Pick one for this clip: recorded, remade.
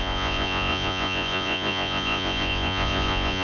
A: remade